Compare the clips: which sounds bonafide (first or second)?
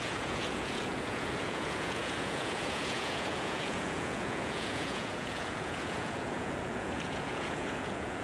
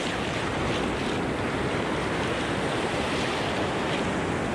second